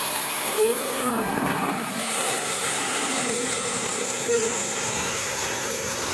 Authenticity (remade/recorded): remade